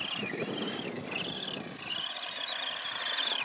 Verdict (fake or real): real